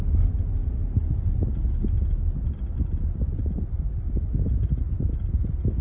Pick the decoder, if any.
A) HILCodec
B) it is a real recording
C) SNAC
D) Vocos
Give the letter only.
B